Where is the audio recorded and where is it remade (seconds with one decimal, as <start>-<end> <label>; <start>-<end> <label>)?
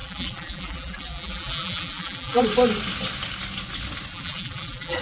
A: 0.0-2.4 remade; 2.4-4.1 recorded; 4.1-5.0 remade